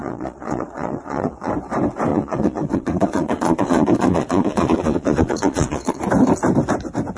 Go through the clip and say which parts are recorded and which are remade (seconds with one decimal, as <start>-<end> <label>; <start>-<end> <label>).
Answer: 0.0-1.5 remade; 1.5-2.1 recorded; 2.1-6.0 remade; 6.0-7.2 recorded